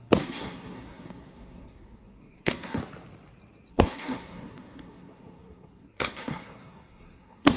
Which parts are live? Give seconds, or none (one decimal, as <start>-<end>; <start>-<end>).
2.8-3.7